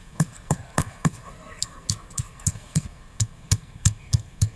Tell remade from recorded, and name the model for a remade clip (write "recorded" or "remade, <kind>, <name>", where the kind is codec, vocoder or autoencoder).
remade, codec, SNAC